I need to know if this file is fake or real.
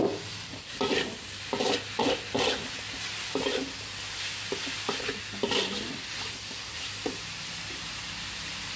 real